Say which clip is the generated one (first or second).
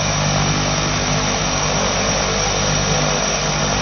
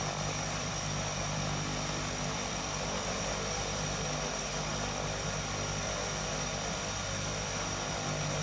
second